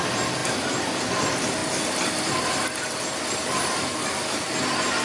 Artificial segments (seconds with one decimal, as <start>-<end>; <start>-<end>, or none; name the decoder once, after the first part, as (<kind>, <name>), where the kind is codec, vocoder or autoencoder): none